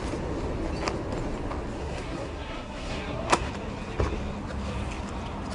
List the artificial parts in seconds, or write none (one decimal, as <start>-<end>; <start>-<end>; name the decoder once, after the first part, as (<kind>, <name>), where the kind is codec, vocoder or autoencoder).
1.8-3.5 (codec, SNAC)

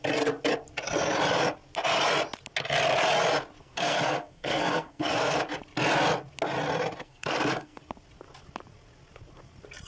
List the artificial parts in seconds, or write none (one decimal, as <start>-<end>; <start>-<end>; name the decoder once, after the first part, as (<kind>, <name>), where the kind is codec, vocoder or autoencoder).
3.6-5.4 (codec, SNAC); 7.0-7.8

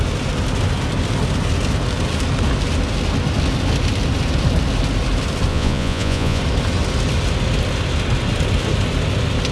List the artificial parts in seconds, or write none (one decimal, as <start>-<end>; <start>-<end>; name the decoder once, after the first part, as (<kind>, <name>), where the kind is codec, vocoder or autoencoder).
5.5-6.4 (vocoder, Vocos)

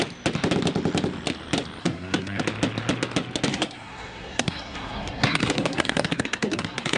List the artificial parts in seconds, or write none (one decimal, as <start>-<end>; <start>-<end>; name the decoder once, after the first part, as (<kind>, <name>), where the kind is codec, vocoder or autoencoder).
1.8-2.4 (codec, SNAC); 3.5-7.0